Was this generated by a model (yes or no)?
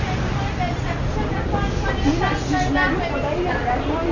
no